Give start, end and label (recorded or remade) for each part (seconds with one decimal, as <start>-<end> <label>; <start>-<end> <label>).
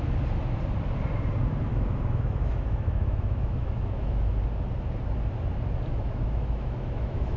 0.0-1.7 recorded; 1.7-4.4 remade; 4.4-5.9 recorded; 5.9-7.4 remade